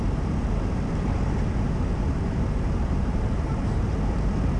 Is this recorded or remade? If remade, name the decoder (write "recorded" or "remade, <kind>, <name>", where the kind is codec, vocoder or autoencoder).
remade, vocoder, BigVGAN v2